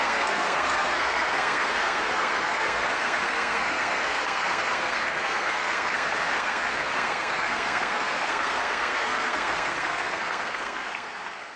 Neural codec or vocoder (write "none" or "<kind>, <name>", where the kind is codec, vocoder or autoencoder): codec, SNAC